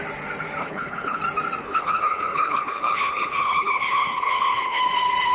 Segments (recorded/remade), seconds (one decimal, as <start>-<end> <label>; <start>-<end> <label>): 0.0-0.6 recorded; 0.6-1.2 remade; 1.2-1.6 recorded; 1.6-4.8 remade; 4.8-5.3 recorded